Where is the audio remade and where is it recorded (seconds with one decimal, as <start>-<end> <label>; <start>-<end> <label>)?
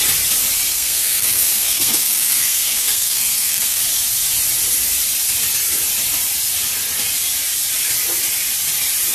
0.0-0.7 recorded; 0.7-3.8 remade; 3.8-9.1 recorded